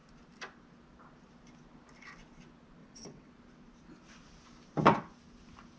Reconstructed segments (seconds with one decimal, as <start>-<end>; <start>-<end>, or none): 2.8-3.3